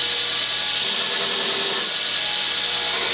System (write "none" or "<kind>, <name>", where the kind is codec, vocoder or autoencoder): none